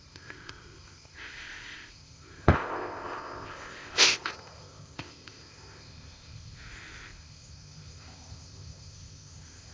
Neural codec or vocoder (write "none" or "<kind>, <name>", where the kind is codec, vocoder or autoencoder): codec, ZipCodec